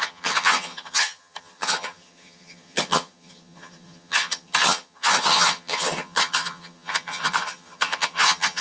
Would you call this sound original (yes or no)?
no